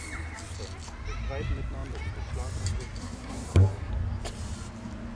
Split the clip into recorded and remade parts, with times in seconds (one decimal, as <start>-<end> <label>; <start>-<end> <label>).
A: 0.0-3.0 recorded; 3.0-3.9 remade; 3.9-5.1 recorded